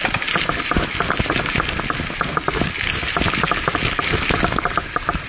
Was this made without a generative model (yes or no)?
yes